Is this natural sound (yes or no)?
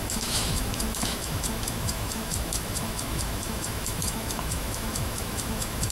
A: no